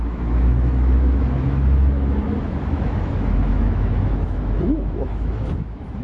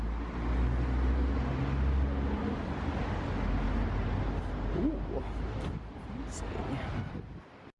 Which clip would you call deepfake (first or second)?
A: first